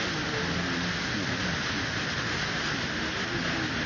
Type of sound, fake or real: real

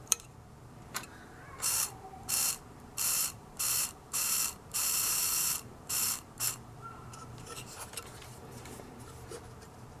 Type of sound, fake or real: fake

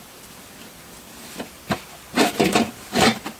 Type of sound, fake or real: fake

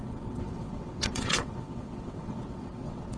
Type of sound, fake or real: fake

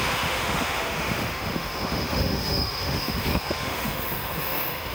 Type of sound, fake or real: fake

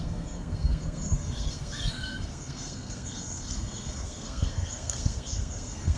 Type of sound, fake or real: fake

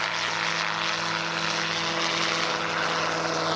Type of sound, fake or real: real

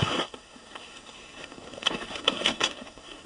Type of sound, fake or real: fake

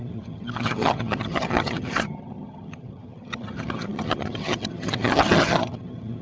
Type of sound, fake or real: fake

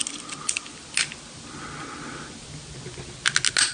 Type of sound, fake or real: real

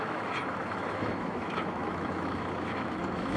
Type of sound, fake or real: fake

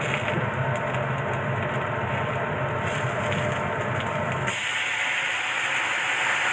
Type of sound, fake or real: real